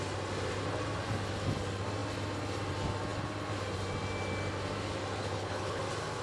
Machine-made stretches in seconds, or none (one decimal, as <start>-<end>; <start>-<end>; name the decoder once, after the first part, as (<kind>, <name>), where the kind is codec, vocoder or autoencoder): 5.2-5.8 (codec, HILCodec)